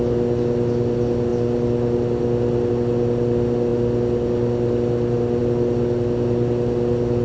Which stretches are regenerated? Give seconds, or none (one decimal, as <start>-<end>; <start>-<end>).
none